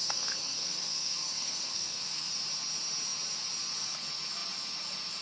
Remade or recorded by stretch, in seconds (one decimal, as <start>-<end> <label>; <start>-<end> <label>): 0.0-2.3 remade; 2.3-5.2 recorded